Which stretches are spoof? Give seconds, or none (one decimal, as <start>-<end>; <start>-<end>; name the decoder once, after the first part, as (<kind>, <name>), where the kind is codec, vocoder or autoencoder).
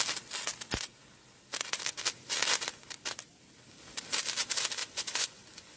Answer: 4.8-5.8 (vocoder, Vocos)